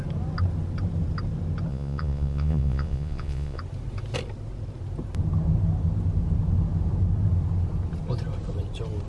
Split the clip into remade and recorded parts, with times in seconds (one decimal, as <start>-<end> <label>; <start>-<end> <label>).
0.0-1.7 recorded; 1.7-3.6 remade; 3.6-9.1 recorded